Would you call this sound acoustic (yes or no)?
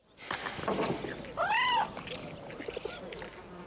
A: yes